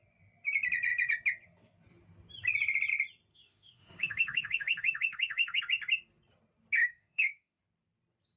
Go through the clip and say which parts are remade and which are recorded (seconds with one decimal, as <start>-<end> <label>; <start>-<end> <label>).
0.0-3.3 recorded; 3.3-5.6 remade; 5.6-6.8 recorded; 6.8-7.6 remade; 7.6-8.4 recorded